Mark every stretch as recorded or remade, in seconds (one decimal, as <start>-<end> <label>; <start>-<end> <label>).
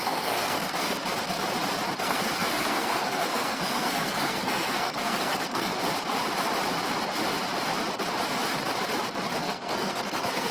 0.0-1.0 remade; 1.0-2.0 recorded; 2.0-5.7 remade; 5.7-9.4 recorded; 9.4-10.5 remade